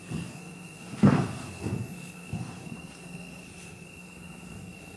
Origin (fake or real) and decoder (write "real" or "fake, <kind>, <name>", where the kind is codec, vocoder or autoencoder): fake, codec, SNAC